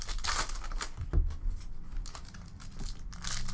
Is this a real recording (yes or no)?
yes